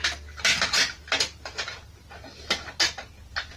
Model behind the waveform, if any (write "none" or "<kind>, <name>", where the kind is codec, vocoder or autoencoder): none